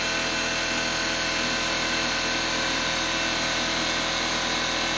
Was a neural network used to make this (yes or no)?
no